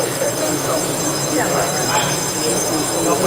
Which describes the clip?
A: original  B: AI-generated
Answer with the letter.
B